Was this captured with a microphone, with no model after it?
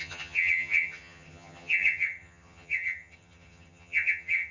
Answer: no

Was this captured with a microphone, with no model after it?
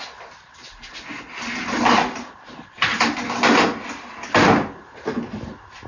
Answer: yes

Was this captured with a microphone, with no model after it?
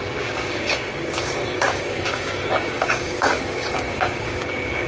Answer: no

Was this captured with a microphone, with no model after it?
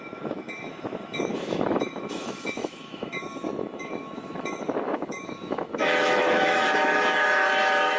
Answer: no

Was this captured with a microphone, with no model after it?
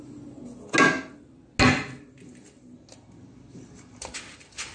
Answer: yes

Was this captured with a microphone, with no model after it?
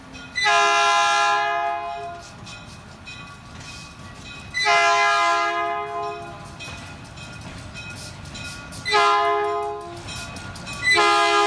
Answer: yes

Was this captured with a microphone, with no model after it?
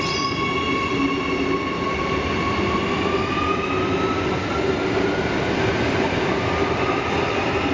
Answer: yes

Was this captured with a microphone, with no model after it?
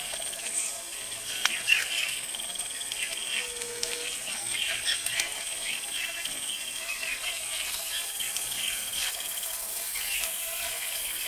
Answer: no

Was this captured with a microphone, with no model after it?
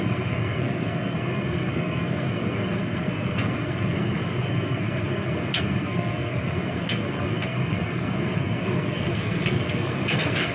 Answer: no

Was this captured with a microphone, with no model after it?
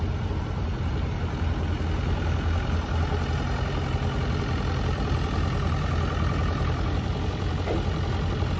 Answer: yes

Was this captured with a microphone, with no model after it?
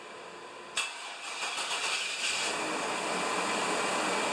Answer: yes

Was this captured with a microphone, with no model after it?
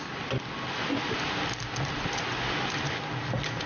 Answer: yes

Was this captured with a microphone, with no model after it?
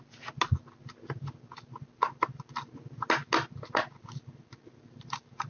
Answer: yes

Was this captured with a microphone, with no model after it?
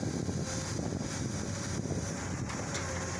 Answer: yes